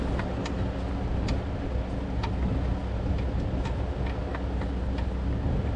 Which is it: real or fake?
real